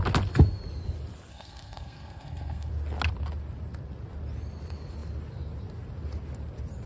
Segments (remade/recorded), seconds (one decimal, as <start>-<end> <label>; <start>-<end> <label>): 0.0-1.3 recorded; 1.3-2.7 remade; 2.7-6.9 recorded